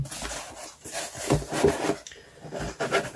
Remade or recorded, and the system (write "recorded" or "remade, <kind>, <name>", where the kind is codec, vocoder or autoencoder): recorded